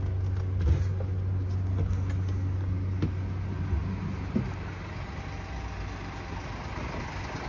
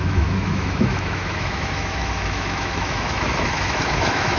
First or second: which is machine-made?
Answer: second